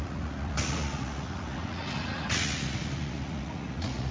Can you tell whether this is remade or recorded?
remade